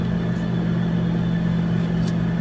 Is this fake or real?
real